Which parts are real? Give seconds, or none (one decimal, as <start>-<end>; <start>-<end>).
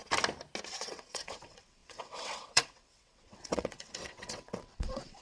0.0-0.7